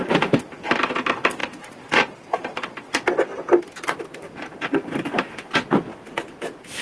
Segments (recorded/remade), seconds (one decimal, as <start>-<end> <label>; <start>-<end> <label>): 0.0-1.4 recorded; 1.4-5.5 remade; 5.5-5.9 recorded; 5.9-6.8 remade